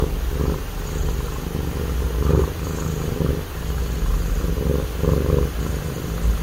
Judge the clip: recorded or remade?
recorded